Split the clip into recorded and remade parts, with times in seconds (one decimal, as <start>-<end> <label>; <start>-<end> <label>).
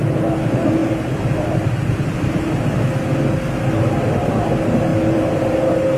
0.0-0.8 recorded; 0.8-2.5 remade; 2.5-4.9 recorded; 4.9-5.4 remade; 5.4-6.0 recorded